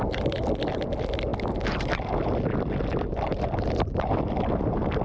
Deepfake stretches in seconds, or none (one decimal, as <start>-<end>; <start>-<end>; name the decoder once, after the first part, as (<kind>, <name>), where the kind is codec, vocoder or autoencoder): none